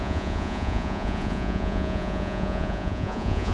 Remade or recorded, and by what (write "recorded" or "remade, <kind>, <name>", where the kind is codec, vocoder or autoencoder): remade, vocoder, Vocos